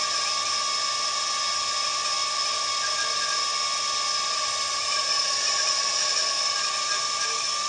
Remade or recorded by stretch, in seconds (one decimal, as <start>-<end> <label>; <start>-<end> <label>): 0.0-7.7 recorded